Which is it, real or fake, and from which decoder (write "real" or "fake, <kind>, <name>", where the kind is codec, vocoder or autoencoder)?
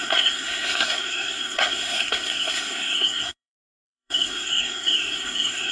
fake, codec, SNAC